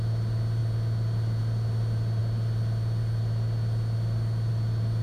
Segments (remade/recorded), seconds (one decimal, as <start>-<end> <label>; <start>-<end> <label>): 0.0-5.0 recorded